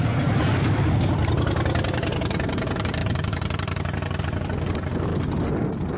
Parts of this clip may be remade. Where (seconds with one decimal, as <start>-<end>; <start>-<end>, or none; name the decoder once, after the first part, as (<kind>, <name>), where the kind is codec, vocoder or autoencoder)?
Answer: 0.0-5.1 (vocoder, BigVGAN v2)